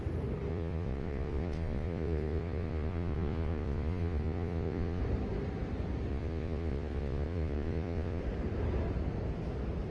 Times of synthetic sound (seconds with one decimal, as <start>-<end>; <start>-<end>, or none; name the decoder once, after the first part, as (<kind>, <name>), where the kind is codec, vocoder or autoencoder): 0.5-5.0 (vocoder, Vocos); 6.1-8.2